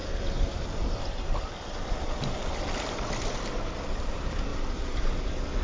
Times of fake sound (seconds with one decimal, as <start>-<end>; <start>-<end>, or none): 1.4-4.5